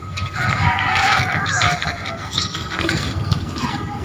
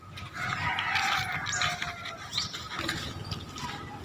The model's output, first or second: first